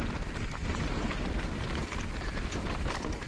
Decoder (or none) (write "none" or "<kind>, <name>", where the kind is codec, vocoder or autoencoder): none